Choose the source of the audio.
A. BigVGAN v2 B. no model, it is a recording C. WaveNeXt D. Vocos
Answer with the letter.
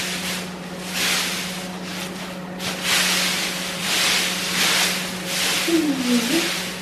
B